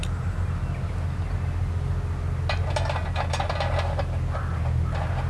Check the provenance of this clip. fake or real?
real